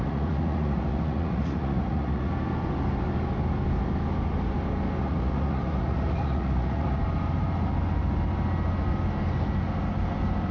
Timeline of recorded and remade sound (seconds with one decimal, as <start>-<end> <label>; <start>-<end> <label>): 0.0-2.3 remade; 2.3-5.0 recorded; 5.0-7.0 remade; 7.0-10.5 recorded

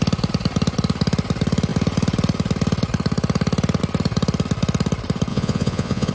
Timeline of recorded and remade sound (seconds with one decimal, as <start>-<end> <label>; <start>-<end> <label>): 0.0-5.3 recorded; 5.3-6.1 remade

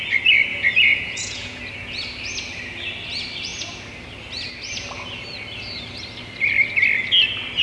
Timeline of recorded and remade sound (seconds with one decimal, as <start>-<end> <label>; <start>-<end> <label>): 0.0-0.5 recorded; 0.5-1.6 remade; 1.6-7.6 recorded

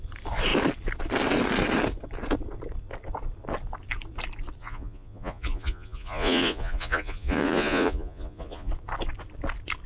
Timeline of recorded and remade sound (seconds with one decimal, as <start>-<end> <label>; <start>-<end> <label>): 0.0-4.6 recorded; 4.6-8.7 remade; 8.7-9.9 recorded